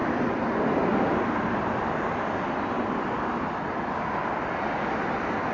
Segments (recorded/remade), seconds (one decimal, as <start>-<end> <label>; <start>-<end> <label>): 0.0-5.5 recorded